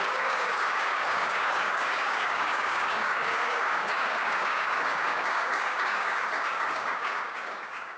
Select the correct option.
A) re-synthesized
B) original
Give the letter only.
A